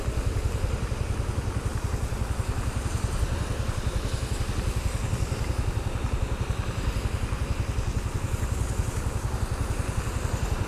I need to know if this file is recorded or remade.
recorded